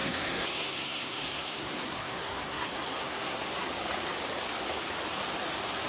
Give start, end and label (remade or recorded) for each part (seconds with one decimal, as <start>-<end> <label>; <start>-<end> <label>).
0.0-3.5 remade; 3.5-5.9 recorded